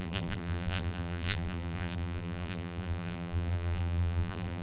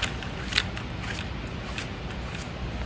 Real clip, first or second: second